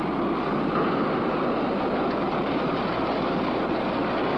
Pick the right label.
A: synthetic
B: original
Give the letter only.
B